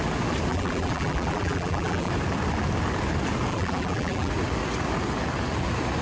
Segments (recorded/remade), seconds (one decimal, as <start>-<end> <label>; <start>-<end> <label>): 0.0-0.5 recorded; 0.5-2.1 remade; 2.1-3.5 recorded; 3.5-4.3 remade; 4.3-6.0 recorded